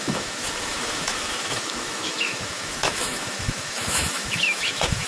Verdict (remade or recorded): remade